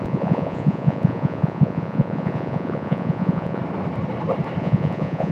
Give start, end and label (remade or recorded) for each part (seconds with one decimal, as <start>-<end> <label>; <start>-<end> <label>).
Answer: 0.0-3.6 remade; 3.6-4.6 recorded; 4.6-5.3 remade